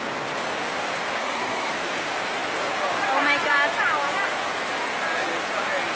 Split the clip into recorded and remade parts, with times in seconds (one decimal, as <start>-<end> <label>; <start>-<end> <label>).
0.0-1.2 recorded; 1.2-1.7 remade; 1.7-6.0 recorded